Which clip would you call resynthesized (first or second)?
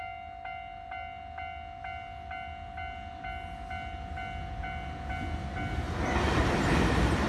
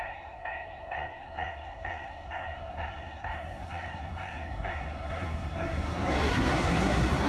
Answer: second